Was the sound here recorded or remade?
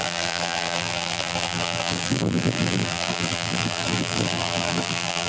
remade